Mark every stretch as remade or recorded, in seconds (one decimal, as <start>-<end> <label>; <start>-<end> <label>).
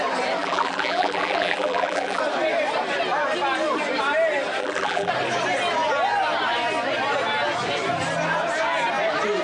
0.0-0.4 recorded; 0.4-2.2 remade; 2.2-4.6 recorded; 4.6-5.1 remade; 5.1-9.4 recorded